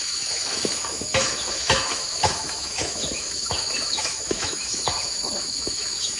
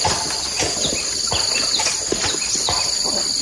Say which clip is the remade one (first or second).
first